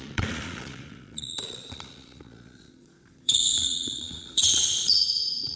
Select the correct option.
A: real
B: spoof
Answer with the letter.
B